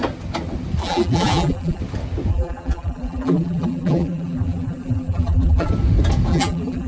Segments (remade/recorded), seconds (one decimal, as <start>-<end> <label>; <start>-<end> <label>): 0.0-0.8 recorded; 0.8-1.8 remade; 1.8-2.3 recorded; 2.3-5.7 remade; 5.7-6.3 recorded; 6.3-6.9 remade